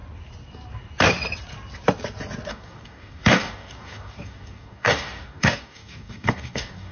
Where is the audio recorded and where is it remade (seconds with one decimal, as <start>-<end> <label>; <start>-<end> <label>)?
0.0-2.5 recorded; 2.5-6.9 remade